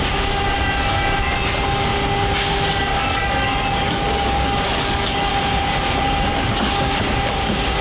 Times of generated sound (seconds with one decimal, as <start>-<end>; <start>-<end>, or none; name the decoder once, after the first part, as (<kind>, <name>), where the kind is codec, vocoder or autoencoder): 2.9-5.3 (codec, DAC); 6.3-6.9